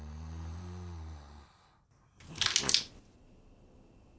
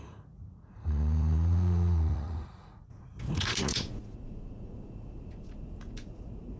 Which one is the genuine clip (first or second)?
first